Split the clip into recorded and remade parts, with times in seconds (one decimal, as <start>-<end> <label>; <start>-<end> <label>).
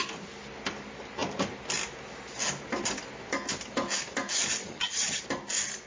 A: 0.0-4.6 recorded; 4.6-5.2 remade; 5.2-5.9 recorded